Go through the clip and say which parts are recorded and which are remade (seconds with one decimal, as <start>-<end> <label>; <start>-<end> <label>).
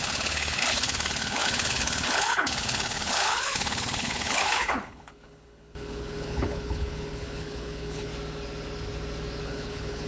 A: 0.0-8.1 remade; 8.1-9.4 recorded; 9.4-10.1 remade